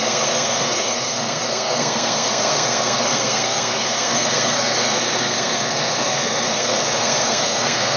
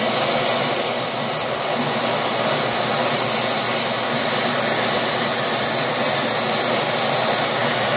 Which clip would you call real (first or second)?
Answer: second